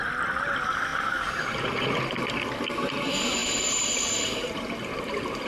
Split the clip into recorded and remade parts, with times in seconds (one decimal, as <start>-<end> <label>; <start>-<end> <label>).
0.0-0.9 recorded; 0.9-2.3 remade; 2.3-3.4 recorded; 3.4-5.5 remade

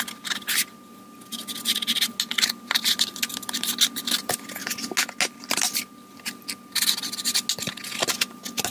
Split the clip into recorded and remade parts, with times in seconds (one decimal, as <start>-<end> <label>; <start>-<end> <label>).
0.0-8.7 recorded

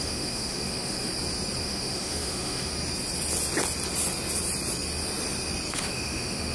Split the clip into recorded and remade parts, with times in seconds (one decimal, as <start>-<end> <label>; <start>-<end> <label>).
0.0-1.1 remade; 1.1-1.6 recorded; 1.6-2.7 remade; 2.7-5.7 recorded; 5.7-6.5 remade

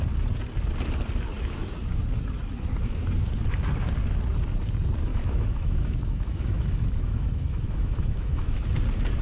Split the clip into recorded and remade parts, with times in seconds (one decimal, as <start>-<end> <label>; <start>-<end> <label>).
0.0-5.1 recorded; 5.1-8.6 remade; 8.6-9.2 recorded